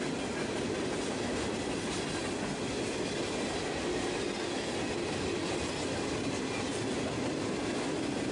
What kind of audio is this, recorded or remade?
recorded